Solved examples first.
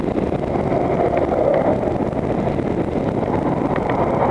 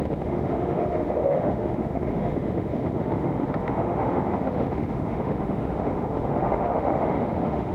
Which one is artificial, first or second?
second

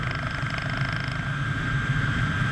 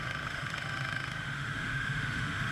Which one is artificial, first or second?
second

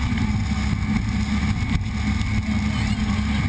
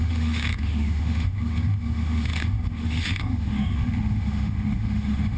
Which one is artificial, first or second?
second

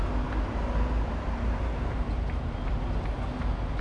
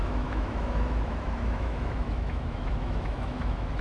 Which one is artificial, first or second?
second